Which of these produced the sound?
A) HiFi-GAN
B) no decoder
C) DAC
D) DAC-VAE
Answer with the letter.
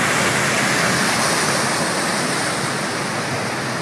B